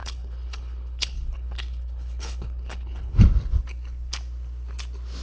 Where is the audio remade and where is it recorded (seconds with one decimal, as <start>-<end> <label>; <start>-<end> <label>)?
0.0-3.1 remade; 3.1-5.2 recorded